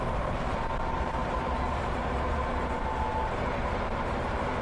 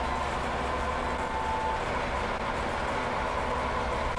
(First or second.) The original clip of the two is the second